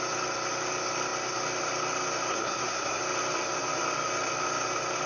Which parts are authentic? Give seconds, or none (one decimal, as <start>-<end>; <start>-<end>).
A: 0.0-2.3; 3.0-5.1